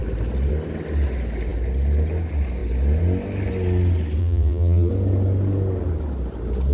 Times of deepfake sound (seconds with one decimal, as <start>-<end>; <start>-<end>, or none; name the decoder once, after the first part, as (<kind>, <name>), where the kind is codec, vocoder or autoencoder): 4.2-4.9 (vocoder, BigVGAN v2)